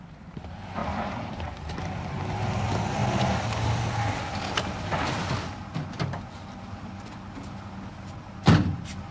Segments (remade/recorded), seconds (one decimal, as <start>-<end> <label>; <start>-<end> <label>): 0.0-9.1 recorded